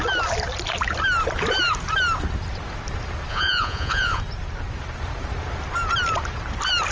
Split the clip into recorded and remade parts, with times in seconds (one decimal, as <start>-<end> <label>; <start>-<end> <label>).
0.0-3.3 recorded; 3.3-4.2 remade; 4.2-6.9 recorded